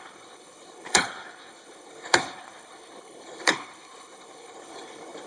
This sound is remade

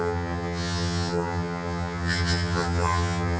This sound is remade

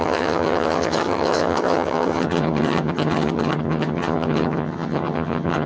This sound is remade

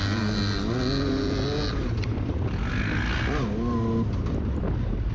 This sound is recorded